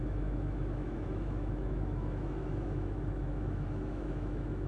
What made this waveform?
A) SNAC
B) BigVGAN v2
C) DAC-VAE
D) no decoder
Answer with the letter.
C